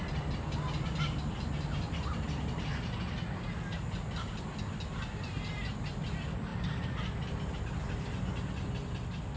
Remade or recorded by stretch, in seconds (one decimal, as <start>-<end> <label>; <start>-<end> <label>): 0.0-9.4 recorded